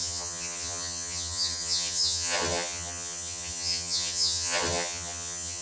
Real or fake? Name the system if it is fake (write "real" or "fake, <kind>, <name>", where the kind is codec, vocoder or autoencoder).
fake, vocoder, HiFi-GAN